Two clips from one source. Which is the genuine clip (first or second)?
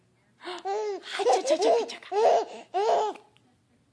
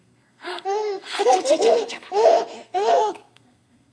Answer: first